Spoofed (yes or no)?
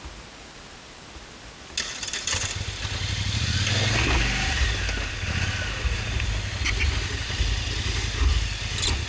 no